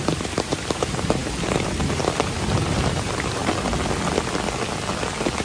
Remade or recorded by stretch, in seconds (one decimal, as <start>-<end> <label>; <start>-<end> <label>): 0.0-3.4 remade; 3.4-5.4 recorded